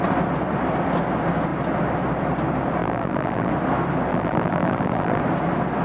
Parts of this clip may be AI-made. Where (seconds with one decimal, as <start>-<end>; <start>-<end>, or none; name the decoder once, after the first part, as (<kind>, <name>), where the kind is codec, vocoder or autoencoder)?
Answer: 2.8-3.5 (vocoder, BigVGAN v2); 4.1-5.2